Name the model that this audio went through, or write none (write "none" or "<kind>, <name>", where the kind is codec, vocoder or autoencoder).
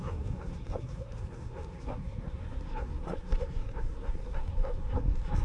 codec, SNAC